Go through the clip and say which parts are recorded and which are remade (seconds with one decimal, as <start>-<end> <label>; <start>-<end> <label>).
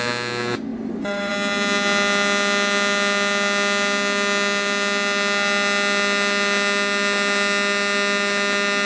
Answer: 0.0-0.7 recorded; 0.7-1.3 remade; 1.3-8.8 recorded